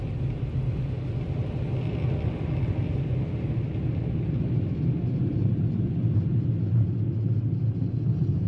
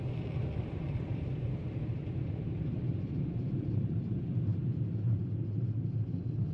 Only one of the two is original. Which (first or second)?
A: first